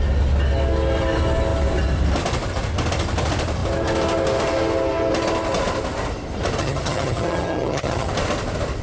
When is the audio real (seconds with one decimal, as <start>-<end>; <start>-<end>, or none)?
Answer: 0.0-6.6; 8.1-8.8